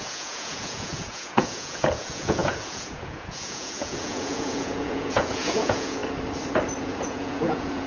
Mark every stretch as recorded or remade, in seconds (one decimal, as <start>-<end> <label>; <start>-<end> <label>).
0.0-6.0 remade; 6.0-6.8 recorded; 6.8-7.9 remade